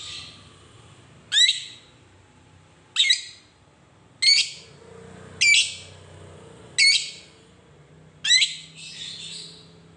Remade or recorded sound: recorded